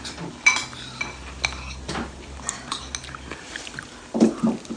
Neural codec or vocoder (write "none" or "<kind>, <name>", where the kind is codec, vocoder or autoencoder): none